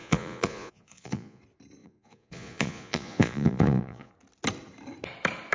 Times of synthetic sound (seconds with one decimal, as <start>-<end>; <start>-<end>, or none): 0.0-1.4; 1.8-4.1